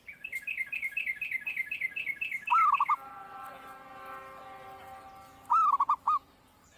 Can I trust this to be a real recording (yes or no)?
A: yes